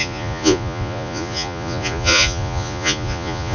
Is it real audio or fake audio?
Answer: fake